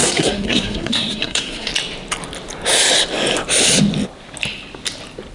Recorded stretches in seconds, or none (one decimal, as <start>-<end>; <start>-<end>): 1.7-5.3

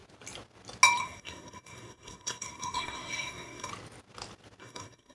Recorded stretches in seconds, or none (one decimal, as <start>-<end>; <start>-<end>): 0.0-1.0; 3.7-4.6

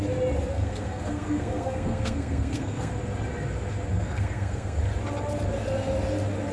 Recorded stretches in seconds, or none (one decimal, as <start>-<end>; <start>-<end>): 0.0-0.5; 2.9-3.9; 4.8-6.5

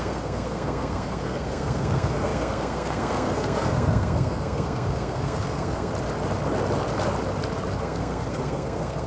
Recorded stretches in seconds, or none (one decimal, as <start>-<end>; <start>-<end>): 5.9-7.8

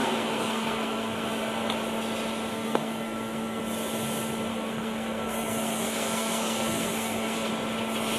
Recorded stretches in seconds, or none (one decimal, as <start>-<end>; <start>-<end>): 1.3-2.5; 3.6-4.5; 7.5-8.2